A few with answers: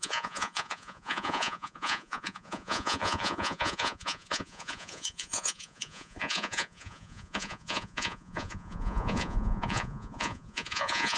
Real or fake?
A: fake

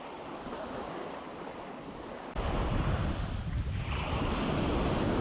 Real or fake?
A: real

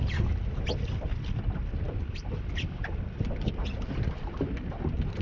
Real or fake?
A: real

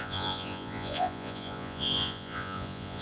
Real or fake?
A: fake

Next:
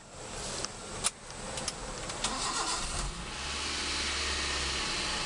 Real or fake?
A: real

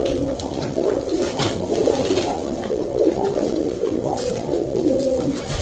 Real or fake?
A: fake